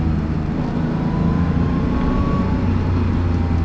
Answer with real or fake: real